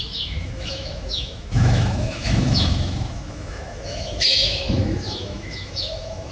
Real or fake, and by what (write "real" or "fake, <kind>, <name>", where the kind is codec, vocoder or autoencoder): fake, autoencoder, DAC-VAE